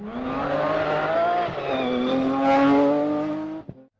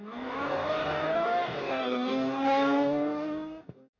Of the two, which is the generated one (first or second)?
second